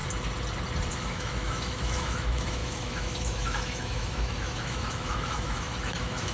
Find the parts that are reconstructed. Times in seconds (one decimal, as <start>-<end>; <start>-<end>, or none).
0.9-6.3